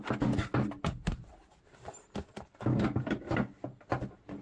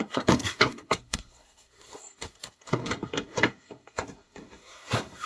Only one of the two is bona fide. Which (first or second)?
first